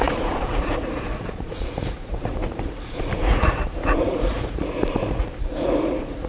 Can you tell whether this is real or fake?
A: fake